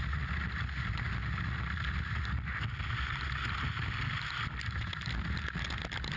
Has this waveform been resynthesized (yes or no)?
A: no